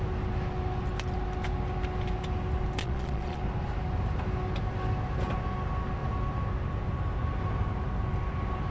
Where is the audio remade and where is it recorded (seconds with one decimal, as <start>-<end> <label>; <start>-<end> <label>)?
0.0-2.8 recorded; 2.8-3.4 remade; 3.4-8.7 recorded